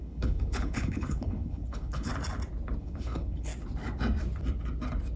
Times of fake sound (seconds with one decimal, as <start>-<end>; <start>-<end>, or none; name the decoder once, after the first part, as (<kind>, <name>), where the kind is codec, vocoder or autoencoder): 0.0-2.1 (codec, HILCodec); 2.8-3.5